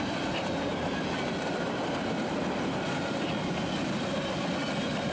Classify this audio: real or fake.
real